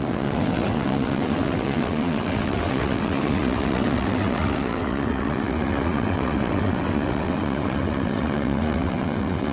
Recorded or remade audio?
remade